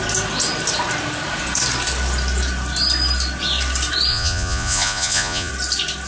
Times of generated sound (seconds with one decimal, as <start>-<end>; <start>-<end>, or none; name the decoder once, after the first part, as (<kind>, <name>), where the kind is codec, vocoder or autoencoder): 4.1-5.5 (vocoder, Vocos)